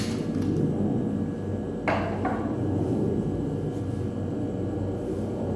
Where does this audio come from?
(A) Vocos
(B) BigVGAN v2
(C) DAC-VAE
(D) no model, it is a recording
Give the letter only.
D